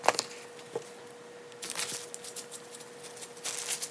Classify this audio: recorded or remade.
recorded